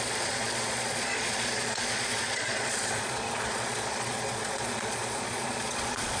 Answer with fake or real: fake